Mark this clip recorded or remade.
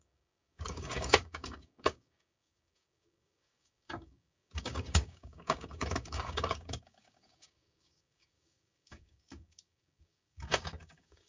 remade